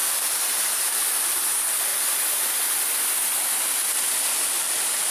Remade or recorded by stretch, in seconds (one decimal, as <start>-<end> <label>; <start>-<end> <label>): 0.0-1.0 remade; 1.0-4.3 recorded; 4.3-5.1 remade